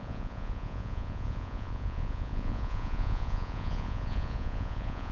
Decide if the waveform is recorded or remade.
remade